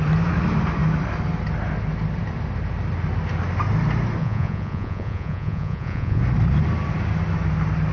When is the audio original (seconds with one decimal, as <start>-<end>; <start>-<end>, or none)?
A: 0.0-4.2; 6.2-7.9